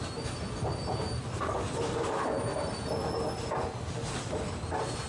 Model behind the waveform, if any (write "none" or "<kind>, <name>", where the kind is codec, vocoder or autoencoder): none